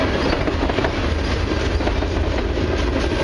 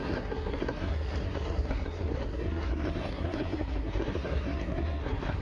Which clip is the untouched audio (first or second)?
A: first